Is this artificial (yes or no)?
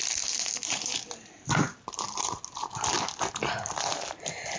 no